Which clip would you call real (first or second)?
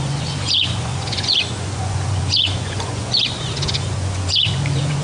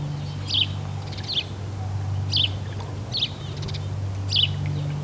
second